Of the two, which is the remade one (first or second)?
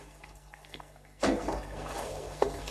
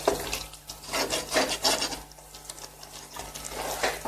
first